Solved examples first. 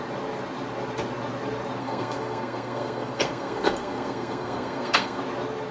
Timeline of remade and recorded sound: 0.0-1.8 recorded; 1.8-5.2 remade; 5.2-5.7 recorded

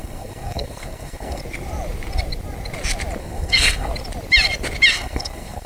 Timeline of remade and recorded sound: 0.0-1.4 remade; 1.4-3.2 recorded; 3.2-3.9 remade; 3.9-4.9 recorded; 4.9-5.7 remade

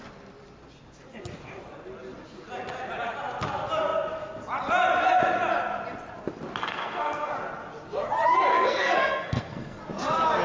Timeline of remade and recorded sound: 0.0-6.6 recorded; 6.6-7.3 remade; 7.3-8.5 recorded; 8.5-9.8 remade; 9.8-10.4 recorded